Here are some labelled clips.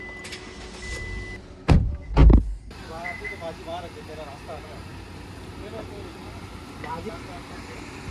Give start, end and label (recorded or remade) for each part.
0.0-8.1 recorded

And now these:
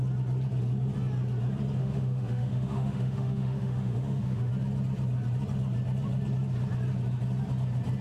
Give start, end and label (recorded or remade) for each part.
0.0-1.8 recorded; 1.8-4.5 remade; 4.5-8.0 recorded

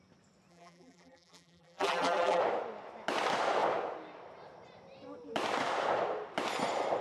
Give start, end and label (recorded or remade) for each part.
0.0-0.5 recorded; 0.5-2.4 remade; 2.4-7.0 recorded

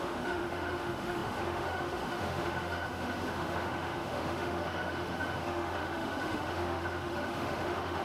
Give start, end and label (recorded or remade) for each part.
0.0-8.0 remade